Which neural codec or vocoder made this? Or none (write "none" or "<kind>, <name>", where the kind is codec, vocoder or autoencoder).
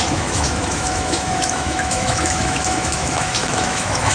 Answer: autoencoder, DAC-VAE